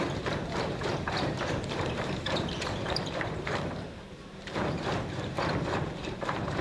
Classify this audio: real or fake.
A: fake